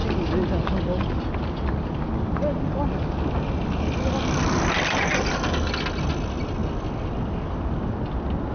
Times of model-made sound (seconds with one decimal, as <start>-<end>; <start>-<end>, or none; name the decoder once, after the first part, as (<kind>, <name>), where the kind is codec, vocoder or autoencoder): none